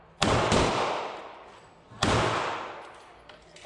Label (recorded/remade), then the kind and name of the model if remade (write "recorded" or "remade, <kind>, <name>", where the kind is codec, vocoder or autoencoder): recorded